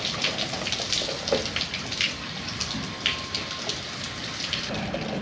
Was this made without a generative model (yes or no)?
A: yes